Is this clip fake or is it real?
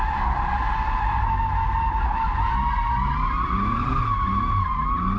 real